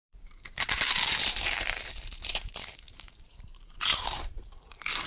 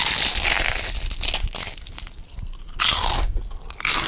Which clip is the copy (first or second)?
first